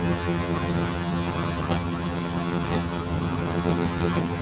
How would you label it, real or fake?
fake